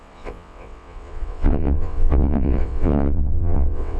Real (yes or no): no